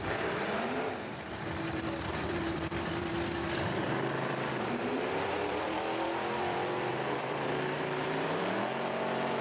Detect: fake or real fake